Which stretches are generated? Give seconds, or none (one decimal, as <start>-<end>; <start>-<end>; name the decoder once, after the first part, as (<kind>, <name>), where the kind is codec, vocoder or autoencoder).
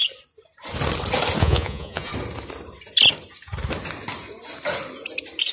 1.4-2.1 (vocoder, Vocos)